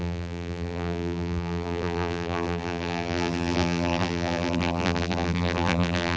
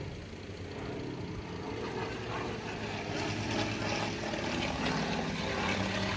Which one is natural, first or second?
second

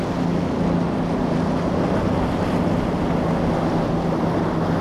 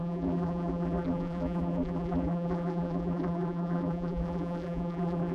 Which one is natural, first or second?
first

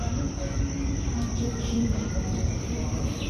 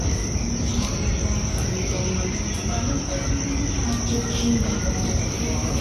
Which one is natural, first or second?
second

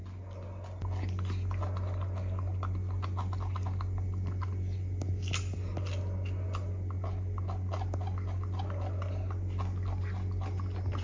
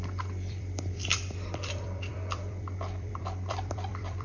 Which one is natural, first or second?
first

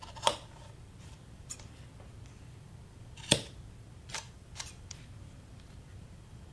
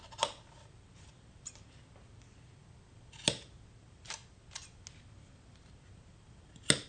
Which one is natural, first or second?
second